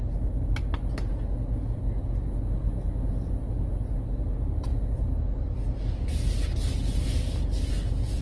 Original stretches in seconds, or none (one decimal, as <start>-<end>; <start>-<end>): 0.0-8.2